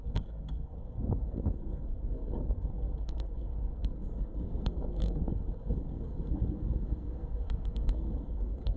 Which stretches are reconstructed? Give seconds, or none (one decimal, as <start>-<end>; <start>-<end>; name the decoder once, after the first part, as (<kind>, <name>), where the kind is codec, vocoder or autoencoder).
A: 0.0-8.8 (codec, SNAC)